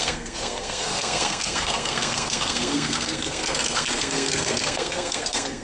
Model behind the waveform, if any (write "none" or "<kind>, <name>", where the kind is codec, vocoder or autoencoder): codec, SNAC